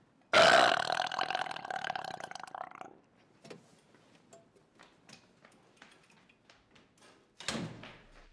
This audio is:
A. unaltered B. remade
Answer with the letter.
A